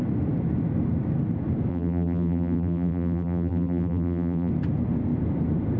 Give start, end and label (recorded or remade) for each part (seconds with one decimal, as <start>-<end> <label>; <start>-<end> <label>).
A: 0.0-1.7 recorded; 1.7-4.5 remade; 4.5-5.8 recorded